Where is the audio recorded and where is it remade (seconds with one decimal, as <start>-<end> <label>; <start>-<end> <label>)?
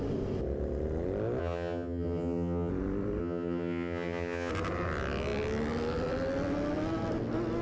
0.0-1.4 recorded; 1.4-2.7 remade; 2.7-3.2 recorded; 3.2-4.5 remade; 4.5-7.6 recorded